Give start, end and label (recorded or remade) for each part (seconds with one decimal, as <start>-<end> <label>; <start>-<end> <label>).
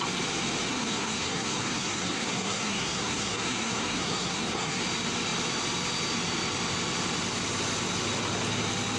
0.0-0.7 recorded; 0.7-4.8 remade; 4.8-9.0 recorded